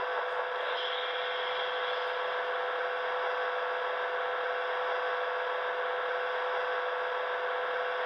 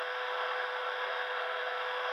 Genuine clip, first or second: first